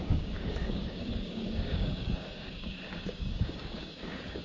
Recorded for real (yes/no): no